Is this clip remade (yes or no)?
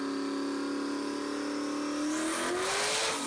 no